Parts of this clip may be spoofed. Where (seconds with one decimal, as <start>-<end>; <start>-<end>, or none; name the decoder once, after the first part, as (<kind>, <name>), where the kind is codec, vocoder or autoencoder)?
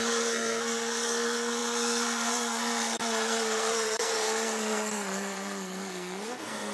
0.0-6.7 (codec, SNAC)